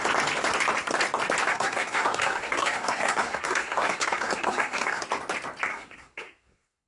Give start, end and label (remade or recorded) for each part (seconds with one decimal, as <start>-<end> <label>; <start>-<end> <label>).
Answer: 0.0-1.5 recorded; 1.5-5.0 remade; 5.0-5.7 recorded; 5.7-6.9 remade